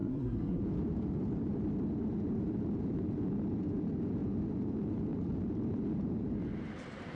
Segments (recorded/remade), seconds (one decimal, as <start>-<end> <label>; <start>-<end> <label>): 0.0-0.6 remade; 0.6-7.2 recorded